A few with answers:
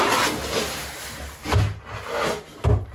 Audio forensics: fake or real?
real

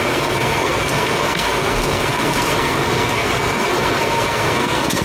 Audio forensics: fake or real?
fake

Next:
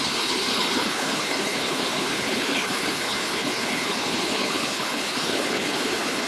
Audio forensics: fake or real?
fake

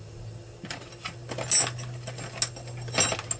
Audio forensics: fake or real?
real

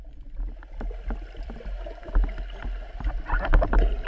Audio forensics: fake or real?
real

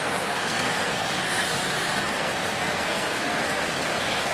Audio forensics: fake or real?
fake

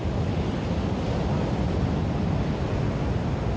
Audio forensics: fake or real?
real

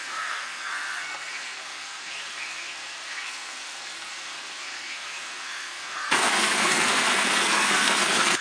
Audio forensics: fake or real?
fake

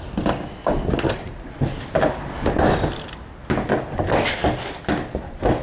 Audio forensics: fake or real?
real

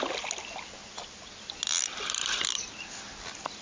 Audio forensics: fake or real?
real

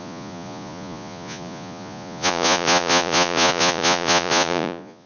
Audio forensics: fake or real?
fake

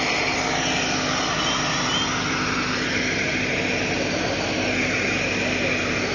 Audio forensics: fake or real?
real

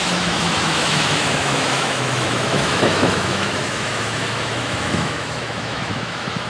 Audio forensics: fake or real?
fake